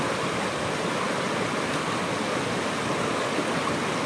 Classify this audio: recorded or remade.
recorded